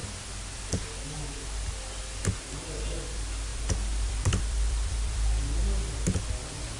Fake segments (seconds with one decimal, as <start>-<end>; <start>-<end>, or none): 3.5-5.6